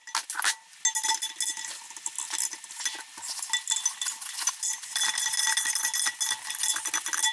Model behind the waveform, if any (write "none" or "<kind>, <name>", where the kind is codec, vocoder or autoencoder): none